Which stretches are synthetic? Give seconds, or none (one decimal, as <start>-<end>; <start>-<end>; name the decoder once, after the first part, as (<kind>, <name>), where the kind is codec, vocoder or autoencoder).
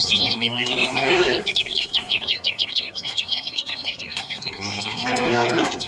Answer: 0.0-5.9 (codec, SNAC)